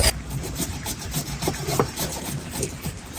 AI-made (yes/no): yes